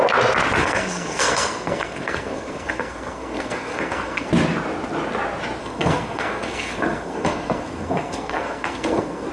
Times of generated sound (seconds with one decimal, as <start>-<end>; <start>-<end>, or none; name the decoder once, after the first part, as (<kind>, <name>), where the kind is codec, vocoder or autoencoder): 0.6-4.3 (codec, SNAC); 5.6-9.3